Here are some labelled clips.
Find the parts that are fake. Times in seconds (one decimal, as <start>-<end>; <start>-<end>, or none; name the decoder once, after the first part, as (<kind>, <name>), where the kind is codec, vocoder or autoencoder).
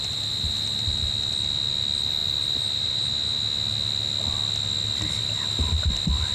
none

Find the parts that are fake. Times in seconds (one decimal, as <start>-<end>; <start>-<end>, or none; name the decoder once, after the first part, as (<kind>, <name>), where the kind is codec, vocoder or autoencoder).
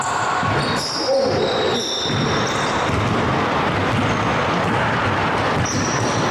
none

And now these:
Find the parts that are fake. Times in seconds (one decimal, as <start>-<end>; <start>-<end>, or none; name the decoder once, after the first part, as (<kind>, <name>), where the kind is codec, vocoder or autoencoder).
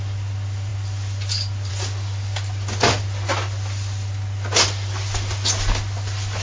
none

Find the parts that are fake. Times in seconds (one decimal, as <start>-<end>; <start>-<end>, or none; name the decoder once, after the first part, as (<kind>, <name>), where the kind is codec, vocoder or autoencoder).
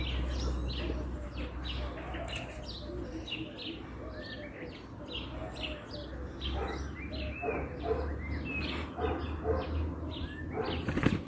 none